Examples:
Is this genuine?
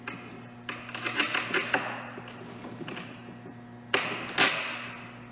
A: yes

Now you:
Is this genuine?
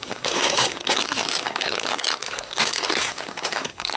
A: no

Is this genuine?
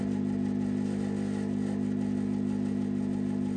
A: yes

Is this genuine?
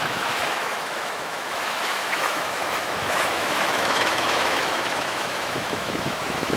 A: no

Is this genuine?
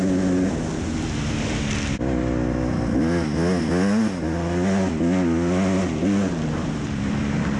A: yes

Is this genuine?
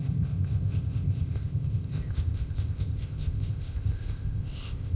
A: no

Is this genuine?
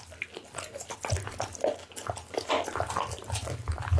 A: yes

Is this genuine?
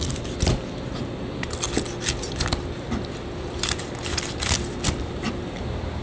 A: yes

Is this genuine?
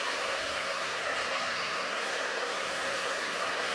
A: no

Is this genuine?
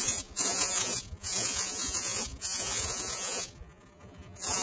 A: no